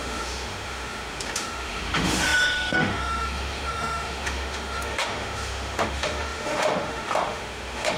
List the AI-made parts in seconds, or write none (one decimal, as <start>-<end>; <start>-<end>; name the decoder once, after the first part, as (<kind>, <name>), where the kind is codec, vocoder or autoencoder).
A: 0.0-8.0 (autoencoder, DAC-VAE)